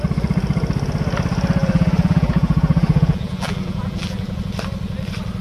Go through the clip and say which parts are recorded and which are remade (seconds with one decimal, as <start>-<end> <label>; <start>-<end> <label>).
0.0-1.6 recorded; 1.6-4.4 remade; 4.4-5.4 recorded